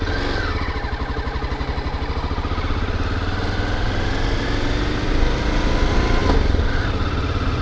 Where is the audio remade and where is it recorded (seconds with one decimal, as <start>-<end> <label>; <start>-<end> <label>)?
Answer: 0.0-7.6 recorded